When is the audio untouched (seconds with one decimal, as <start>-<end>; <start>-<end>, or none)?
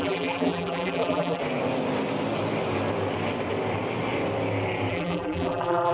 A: 1.4-4.9